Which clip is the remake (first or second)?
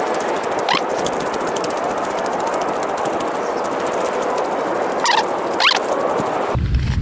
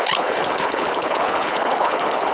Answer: second